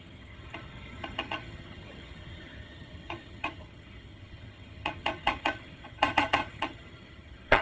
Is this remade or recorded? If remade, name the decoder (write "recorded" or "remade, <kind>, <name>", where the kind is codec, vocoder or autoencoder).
remade, vocoder, HiFi-GAN